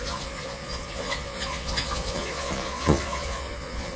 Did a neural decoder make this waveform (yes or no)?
yes